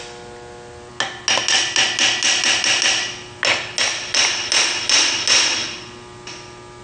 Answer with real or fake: real